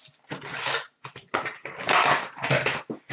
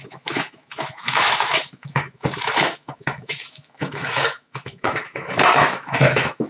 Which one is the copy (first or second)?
second